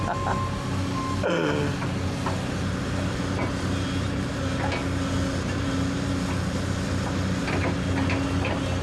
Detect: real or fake real